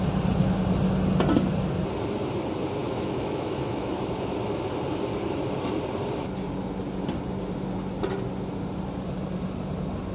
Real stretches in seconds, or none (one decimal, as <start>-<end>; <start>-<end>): 0.0-2.8; 4.0-10.1